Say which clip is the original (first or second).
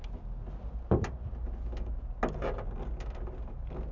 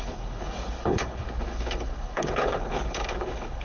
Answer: first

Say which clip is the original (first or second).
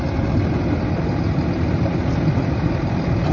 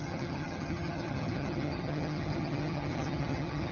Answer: first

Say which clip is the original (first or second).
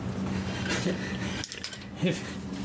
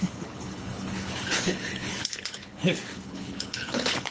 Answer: first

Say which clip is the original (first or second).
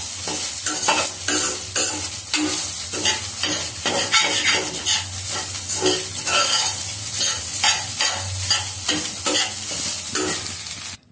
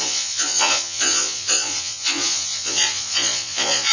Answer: first